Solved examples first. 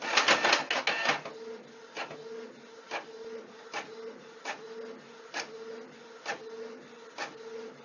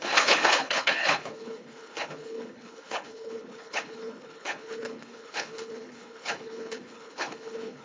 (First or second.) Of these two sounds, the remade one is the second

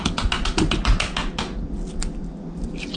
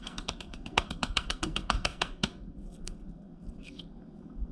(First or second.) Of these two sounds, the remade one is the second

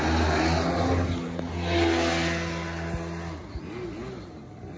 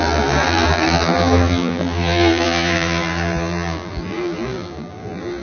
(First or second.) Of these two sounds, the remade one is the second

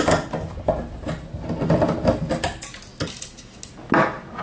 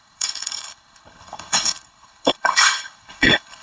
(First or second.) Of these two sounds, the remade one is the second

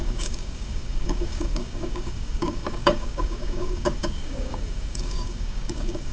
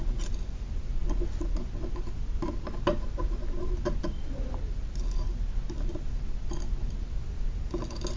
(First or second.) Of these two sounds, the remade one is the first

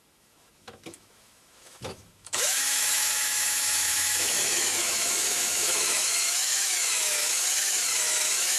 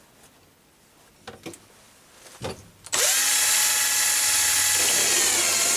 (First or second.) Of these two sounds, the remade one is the first